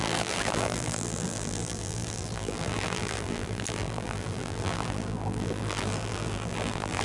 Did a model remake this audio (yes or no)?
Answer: yes